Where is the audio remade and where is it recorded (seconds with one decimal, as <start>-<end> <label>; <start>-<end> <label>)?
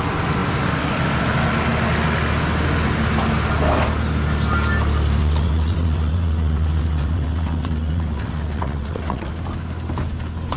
0.0-5.2 recorded; 5.2-9.3 remade; 9.3-10.6 recorded